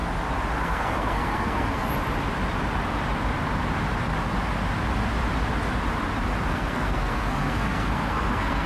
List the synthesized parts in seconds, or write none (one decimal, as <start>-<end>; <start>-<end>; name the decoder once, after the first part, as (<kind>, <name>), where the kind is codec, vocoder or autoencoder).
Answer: 0.6-1.9 (codec, SNAC); 6.5-8.7